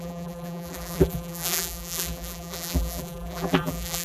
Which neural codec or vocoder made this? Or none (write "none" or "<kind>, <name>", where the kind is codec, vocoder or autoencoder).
vocoder, BigVGAN v2